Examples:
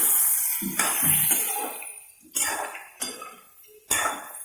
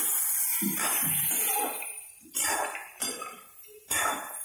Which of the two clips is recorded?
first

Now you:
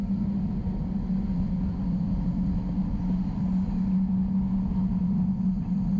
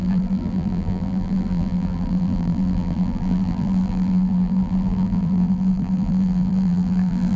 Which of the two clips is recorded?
first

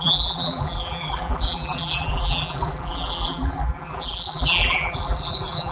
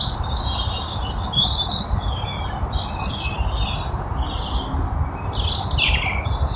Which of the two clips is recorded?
second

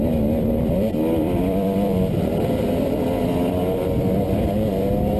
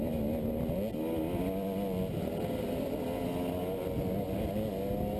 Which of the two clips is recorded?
second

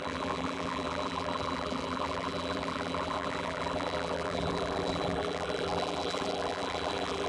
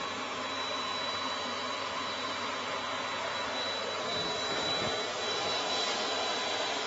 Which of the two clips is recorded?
second